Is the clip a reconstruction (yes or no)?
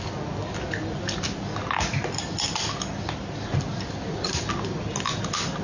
no